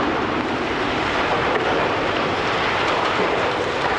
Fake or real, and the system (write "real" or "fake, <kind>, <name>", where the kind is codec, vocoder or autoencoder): fake, vocoder, BigVGAN v2